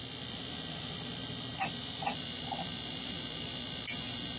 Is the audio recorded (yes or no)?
yes